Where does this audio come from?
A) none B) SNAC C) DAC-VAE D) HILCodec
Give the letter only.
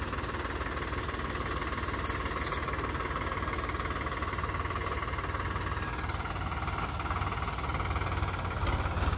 A